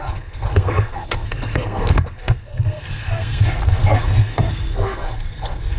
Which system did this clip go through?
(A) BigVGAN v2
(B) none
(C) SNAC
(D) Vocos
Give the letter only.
C